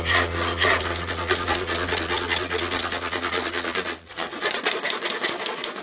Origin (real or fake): fake